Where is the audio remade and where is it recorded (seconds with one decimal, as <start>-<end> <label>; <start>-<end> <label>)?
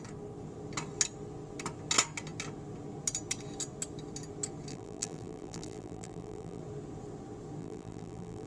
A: 0.0-4.7 recorded; 4.7-6.6 remade; 6.6-7.6 recorded; 7.6-8.5 remade